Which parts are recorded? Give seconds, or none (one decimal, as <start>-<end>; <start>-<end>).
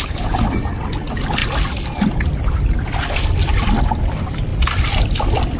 0.0-5.6